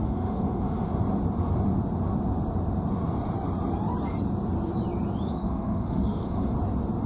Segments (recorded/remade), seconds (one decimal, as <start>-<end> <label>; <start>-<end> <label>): 0.0-0.9 remade; 0.9-5.3 recorded; 5.3-6.5 remade; 6.5-7.1 recorded